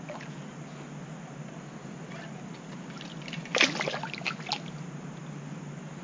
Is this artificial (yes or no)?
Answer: no